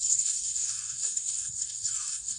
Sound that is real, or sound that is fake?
fake